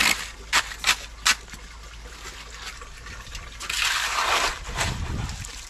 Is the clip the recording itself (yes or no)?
yes